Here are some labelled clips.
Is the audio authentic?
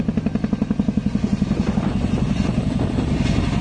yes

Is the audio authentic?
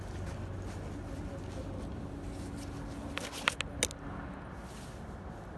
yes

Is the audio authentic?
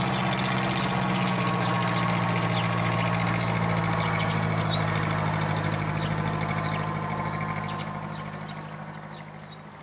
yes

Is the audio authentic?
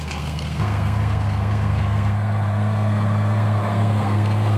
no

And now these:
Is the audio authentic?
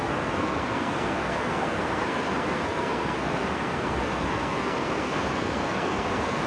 no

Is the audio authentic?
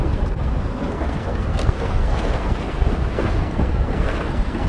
no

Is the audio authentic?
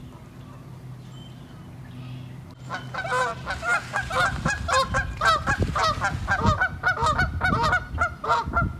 yes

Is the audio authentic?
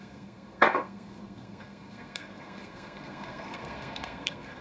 no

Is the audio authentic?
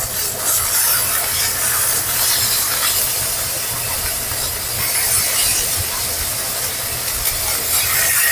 yes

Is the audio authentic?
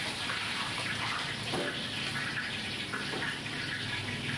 yes